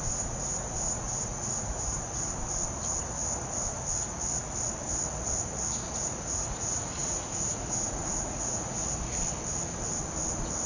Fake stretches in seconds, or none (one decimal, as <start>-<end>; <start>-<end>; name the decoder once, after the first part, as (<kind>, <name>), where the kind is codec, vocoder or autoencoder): 0.0-2.4 (vocoder, Vocos); 6.0-8.8